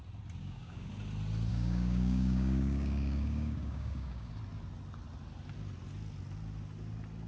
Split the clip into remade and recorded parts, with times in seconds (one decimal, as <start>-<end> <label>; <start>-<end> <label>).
0.0-0.4 recorded; 0.4-0.9 remade; 0.9-1.5 recorded; 1.5-4.3 remade; 4.3-7.3 recorded